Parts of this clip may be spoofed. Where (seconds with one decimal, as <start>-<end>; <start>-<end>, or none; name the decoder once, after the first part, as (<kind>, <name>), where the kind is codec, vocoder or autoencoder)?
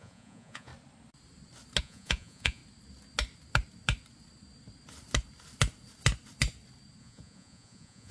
0.0-0.7 (vocoder, Vocos); 1.8-2.6; 7.0-8.1